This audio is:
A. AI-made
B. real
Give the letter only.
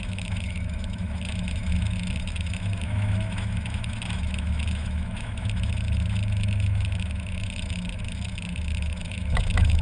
A